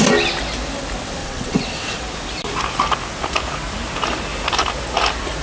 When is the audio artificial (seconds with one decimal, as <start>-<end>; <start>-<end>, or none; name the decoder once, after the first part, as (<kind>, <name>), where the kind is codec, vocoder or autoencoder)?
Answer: 1.2-2.0 (vocoder, WaveNeXt)